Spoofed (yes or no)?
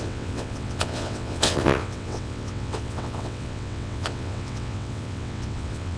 yes